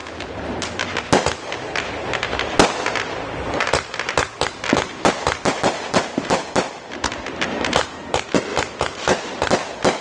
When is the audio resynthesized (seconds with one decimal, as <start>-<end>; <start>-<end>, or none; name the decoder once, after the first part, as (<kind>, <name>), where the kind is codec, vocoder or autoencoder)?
5.5-6.5 (vocoder, BigVGAN v2)